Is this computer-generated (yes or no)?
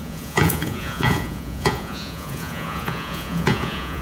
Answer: yes